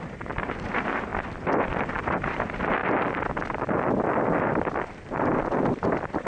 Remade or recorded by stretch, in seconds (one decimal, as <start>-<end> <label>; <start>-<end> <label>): 0.0-1.1 remade; 1.1-1.9 recorded; 1.9-2.8 remade; 2.8-5.7 recorded; 5.7-6.3 remade